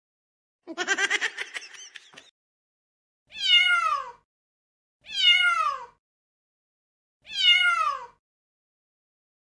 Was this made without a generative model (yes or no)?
yes